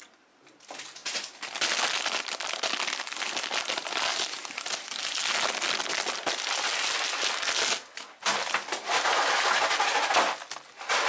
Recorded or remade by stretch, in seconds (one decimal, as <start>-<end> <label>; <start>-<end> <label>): 0.0-11.1 recorded